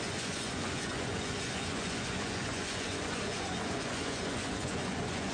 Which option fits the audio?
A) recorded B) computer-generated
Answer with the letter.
B